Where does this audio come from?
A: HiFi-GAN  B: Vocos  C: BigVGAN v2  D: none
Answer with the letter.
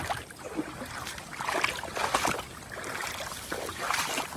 D